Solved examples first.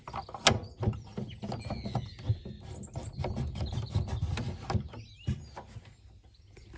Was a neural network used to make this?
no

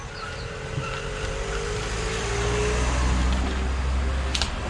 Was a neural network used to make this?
no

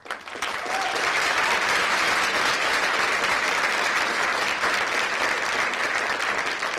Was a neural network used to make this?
no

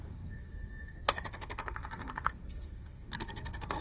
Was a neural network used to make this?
yes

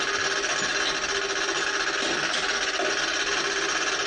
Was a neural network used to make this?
no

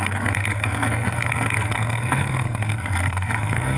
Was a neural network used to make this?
yes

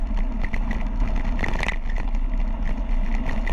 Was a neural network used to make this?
no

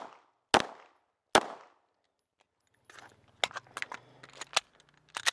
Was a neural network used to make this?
no